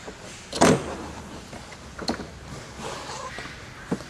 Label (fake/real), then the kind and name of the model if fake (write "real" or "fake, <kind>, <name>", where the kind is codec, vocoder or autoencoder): real